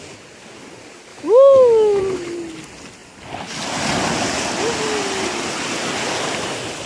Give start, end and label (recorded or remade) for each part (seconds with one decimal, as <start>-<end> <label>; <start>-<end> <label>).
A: 0.0-1.1 recorded; 1.1-2.0 remade; 2.0-6.9 recorded